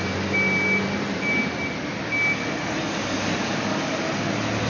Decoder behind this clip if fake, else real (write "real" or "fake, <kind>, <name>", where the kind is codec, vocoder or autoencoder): real